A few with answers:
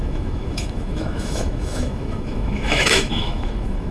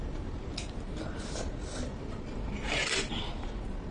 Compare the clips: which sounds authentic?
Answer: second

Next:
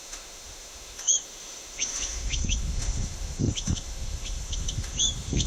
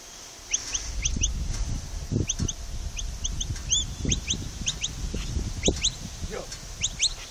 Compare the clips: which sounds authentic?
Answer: second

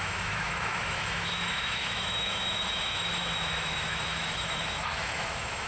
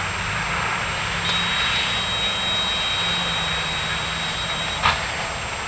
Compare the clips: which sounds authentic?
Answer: second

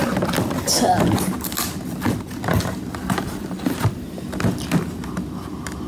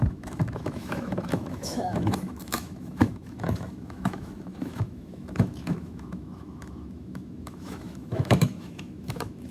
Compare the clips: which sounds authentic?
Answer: first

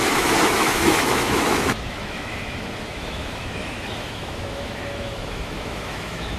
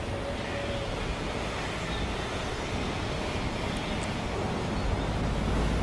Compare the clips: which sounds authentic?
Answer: second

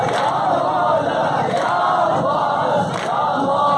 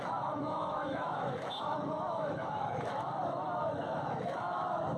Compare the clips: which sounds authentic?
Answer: first